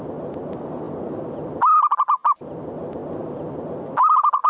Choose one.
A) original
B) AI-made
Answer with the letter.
A